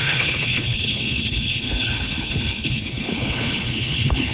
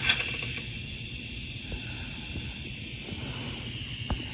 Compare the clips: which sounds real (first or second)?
second